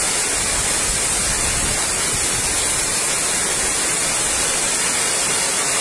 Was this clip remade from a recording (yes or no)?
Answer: no